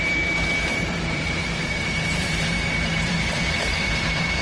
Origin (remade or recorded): remade